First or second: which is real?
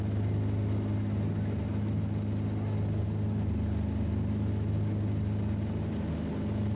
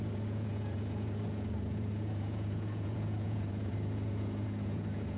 first